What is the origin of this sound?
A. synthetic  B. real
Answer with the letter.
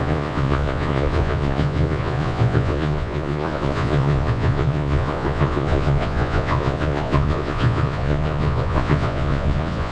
A